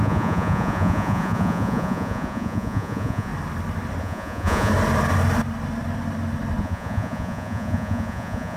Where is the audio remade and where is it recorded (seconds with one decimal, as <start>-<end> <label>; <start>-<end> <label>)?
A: 0.0-3.3 remade; 3.3-4.0 recorded; 4.0-4.7 remade; 4.7-6.6 recorded; 6.6-8.6 remade